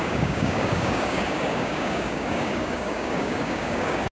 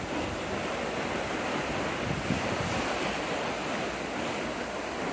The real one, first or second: second